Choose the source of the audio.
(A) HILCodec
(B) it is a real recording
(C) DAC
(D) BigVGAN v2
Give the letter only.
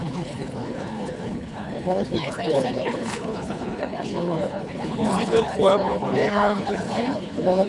A